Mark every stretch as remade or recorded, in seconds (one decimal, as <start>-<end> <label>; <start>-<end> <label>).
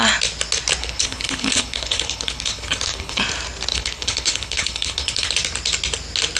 0.0-0.8 recorded; 0.8-3.2 remade; 3.2-3.7 recorded; 3.7-5.3 remade; 5.3-6.4 recorded